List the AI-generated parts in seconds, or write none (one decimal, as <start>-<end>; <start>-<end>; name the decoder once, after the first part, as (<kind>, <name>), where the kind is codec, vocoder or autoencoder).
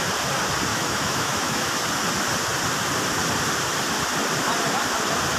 0.7-1.7 (autoencoder, DAC-VAE)